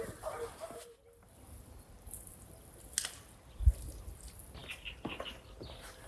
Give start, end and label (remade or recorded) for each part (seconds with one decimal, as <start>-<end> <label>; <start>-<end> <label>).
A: 0.0-6.1 recorded